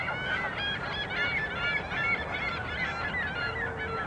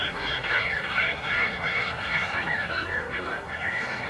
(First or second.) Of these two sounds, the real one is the first